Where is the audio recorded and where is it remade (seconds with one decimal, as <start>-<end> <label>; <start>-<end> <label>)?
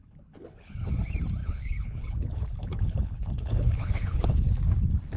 0.0-0.9 remade; 0.9-1.4 recorded; 1.4-4.5 remade; 4.5-5.2 recorded